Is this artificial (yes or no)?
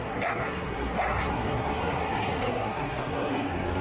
yes